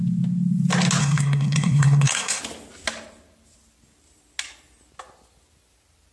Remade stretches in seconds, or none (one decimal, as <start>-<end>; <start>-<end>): 1.0-2.4